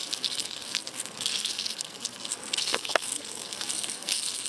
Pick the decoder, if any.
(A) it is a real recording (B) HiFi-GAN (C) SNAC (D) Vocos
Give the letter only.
C